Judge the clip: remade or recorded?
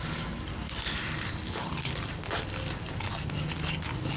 recorded